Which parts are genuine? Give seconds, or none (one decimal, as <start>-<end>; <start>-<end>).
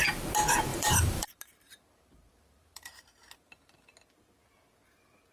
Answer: 0.0-0.7; 3.9-5.3